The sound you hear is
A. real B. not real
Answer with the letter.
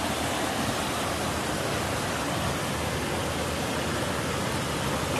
A